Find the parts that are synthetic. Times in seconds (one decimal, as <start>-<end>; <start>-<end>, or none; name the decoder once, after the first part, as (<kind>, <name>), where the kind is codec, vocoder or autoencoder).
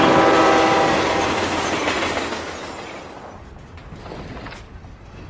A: none